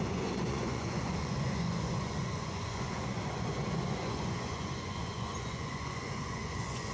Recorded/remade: remade